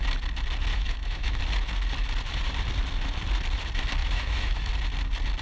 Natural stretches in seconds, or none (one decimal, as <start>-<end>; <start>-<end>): 0.0-0.7; 1.4-4.0; 4.7-5.4